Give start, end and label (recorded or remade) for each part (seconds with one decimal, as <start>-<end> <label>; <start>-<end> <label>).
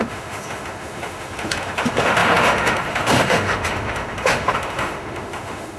0.0-5.8 remade